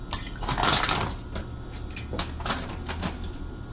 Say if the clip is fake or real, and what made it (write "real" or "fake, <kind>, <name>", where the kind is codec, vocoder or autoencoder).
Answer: real